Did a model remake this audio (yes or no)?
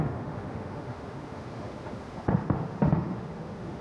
yes